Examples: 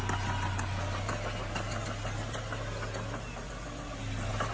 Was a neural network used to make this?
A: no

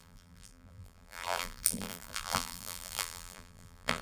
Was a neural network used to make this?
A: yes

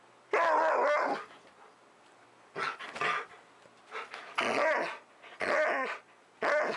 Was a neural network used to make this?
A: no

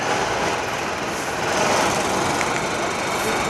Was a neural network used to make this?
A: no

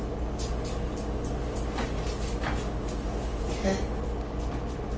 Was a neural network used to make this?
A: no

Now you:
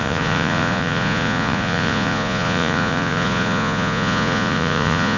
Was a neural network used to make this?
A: yes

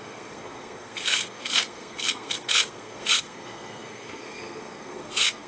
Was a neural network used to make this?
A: yes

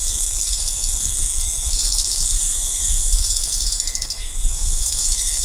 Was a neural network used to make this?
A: yes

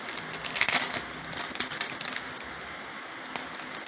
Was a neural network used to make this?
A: no